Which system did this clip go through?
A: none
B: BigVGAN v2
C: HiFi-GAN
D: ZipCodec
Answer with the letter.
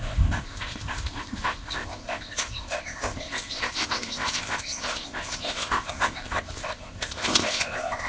D